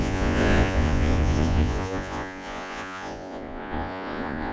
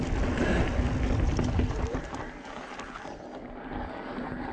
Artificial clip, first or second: first